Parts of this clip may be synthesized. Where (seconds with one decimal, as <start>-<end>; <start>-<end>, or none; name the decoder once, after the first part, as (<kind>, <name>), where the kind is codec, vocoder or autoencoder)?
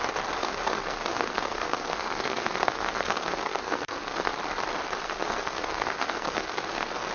0.4-4.3 (codec, SNAC); 5.0-7.1